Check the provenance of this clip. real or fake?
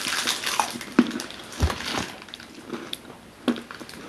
real